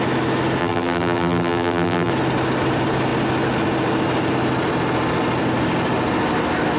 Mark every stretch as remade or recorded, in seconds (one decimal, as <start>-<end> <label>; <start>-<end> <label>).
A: 0.0-0.6 recorded; 0.6-2.1 remade; 2.1-6.8 recorded